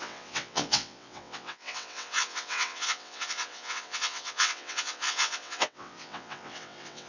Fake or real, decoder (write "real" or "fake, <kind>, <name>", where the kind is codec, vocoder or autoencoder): fake, vocoder, WaveNeXt